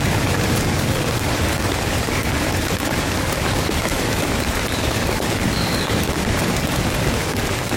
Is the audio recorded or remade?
remade